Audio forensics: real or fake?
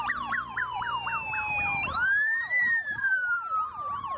fake